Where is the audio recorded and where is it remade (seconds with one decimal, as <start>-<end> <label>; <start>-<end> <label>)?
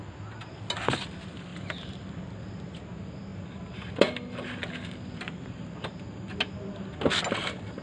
0.0-1.5 recorded; 1.5-2.2 remade; 2.2-3.3 recorded; 3.3-5.5 remade; 5.5-7.8 recorded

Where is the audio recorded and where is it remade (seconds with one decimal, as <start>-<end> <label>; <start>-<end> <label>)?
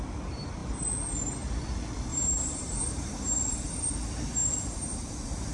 0.0-2.1 recorded; 2.1-3.3 remade; 3.3-5.5 recorded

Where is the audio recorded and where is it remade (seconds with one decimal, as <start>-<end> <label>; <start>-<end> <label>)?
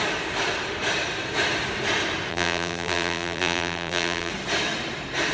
0.0-2.3 recorded; 2.3-4.3 remade; 4.3-5.3 recorded